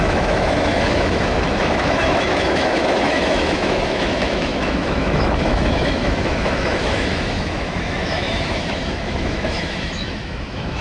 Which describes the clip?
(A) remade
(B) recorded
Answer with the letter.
A